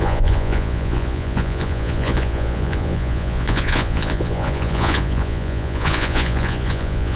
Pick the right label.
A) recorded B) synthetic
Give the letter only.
B